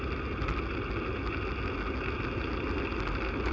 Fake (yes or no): no